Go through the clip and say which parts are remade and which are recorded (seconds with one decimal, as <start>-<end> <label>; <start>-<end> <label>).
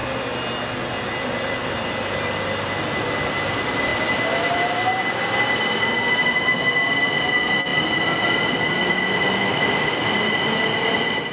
0.0-11.3 recorded